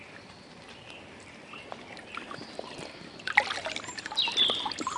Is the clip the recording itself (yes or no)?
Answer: yes